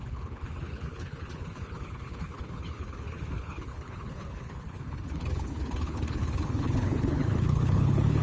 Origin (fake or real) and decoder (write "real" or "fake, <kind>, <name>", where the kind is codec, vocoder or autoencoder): fake, codec, HILCodec